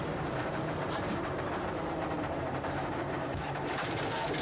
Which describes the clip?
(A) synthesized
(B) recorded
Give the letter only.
A